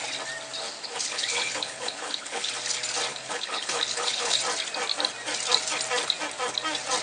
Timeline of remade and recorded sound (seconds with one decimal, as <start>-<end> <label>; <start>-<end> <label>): 0.0-0.8 recorded; 0.8-2.5 remade; 2.5-3.1 recorded; 3.1-4.4 remade; 4.4-7.0 recorded